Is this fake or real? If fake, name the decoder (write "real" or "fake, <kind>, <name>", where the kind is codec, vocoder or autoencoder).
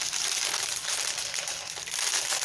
real